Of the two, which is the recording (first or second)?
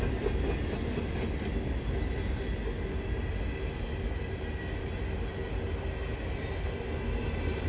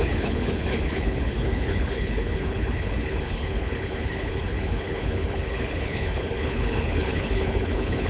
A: first